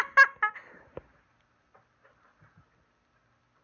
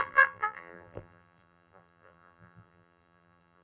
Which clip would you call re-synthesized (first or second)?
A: second